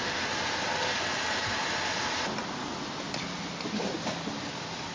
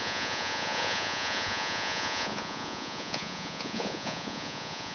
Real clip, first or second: first